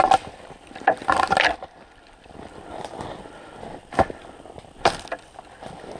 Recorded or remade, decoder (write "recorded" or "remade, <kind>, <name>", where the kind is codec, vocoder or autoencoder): recorded